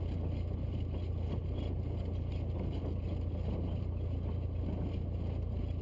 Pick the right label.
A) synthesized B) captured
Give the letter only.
B